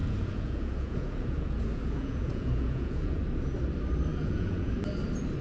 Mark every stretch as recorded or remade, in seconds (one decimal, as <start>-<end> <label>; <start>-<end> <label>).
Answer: 0.0-3.2 remade; 3.2-4.1 recorded; 4.1-4.7 remade; 4.7-5.4 recorded